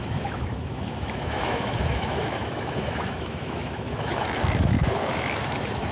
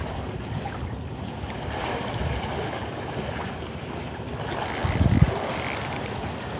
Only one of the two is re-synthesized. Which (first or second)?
first